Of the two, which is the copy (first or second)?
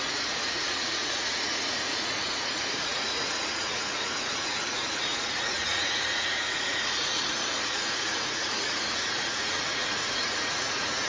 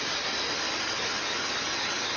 first